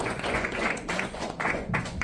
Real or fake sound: fake